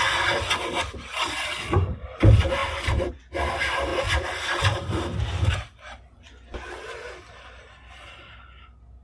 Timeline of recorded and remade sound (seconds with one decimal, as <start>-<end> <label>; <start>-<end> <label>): 0.0-2.6 recorded; 2.6-3.1 remade; 3.1-3.9 recorded; 3.9-4.8 remade; 4.8-9.0 recorded